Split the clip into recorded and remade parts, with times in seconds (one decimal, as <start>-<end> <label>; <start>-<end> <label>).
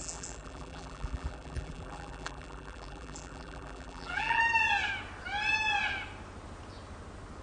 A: 0.0-4.4 remade; 4.4-7.4 recorded